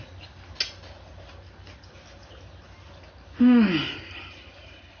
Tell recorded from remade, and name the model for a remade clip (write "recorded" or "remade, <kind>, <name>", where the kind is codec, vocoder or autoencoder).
recorded